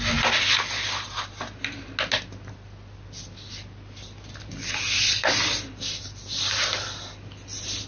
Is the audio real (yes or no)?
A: yes